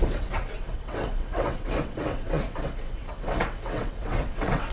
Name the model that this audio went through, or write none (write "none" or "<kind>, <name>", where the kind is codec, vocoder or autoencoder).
vocoder, WaveNeXt